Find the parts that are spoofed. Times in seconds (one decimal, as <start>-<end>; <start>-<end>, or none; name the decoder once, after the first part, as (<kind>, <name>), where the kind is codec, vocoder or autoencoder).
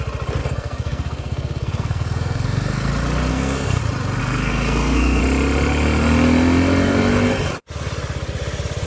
0.4-2.9 (codec, SNAC); 3.3-3.8; 4.2-5.2